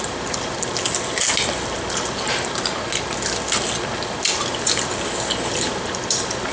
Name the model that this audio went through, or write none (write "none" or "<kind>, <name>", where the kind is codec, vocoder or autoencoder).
none